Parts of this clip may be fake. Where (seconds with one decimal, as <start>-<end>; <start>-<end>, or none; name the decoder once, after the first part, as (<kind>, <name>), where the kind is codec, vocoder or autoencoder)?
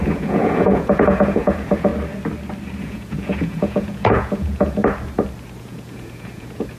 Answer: 0.0-1.9 (vocoder, Vocos); 2.8-4.8; 5.6-6.8